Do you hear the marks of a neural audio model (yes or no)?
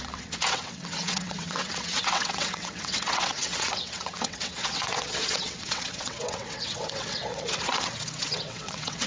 yes